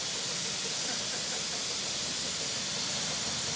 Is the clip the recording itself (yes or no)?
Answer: yes